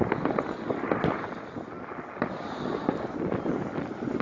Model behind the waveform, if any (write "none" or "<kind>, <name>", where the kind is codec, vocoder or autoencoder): none